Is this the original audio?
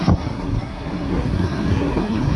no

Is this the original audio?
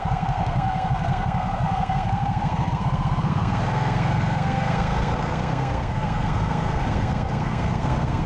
no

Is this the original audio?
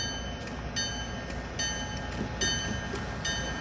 yes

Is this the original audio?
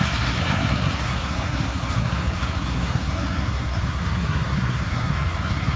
no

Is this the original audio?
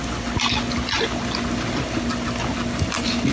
yes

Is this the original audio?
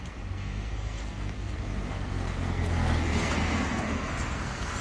no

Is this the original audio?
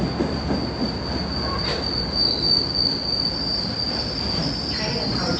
yes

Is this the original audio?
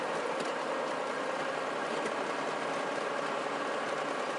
yes